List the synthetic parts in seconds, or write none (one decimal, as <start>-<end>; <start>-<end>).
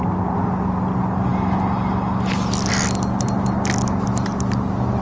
none